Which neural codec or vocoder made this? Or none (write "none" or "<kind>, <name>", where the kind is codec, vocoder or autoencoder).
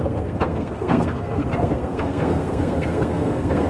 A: codec, SNAC